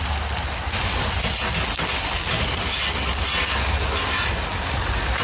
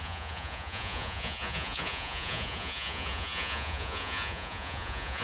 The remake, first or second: second